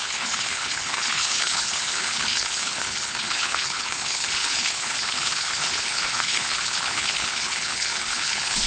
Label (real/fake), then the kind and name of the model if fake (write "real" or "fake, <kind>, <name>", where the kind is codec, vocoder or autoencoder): fake, codec, HILCodec